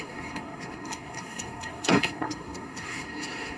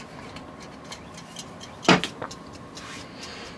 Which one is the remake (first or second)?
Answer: first